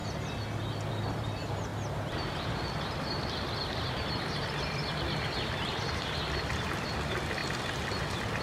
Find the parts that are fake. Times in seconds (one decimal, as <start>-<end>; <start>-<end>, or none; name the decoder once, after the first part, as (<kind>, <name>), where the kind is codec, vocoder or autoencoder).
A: 0.9-1.7 (vocoder, BigVGAN v2); 3.9-7.4